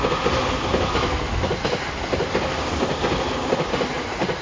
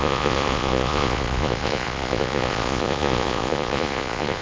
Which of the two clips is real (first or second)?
first